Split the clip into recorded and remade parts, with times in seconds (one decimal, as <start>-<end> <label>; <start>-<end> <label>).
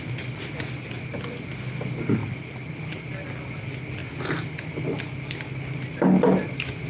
0.0-4.0 recorded; 4.0-4.8 remade; 4.8-6.9 recorded